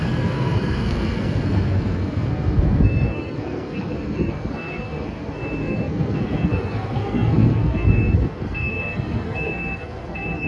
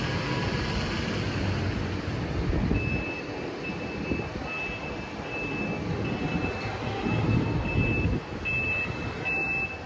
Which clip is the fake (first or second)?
first